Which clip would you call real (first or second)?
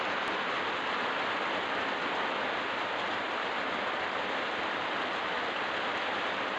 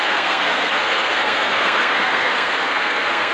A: first